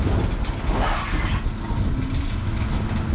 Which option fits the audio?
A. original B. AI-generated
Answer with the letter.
A